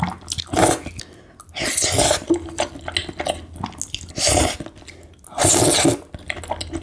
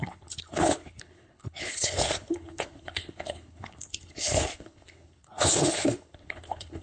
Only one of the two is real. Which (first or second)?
first